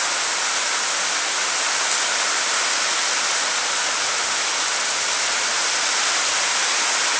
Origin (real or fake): real